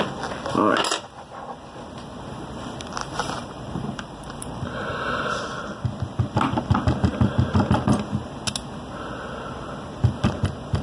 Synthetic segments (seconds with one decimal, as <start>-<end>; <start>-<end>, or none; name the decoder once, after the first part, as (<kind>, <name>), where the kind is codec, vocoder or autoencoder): 3.0-4.6 (vocoder, BigVGAN v2)